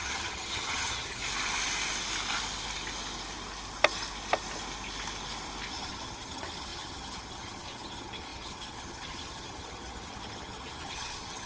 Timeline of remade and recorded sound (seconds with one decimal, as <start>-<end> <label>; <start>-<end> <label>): 0.0-1.2 remade; 1.2-5.7 recorded; 5.7-11.5 remade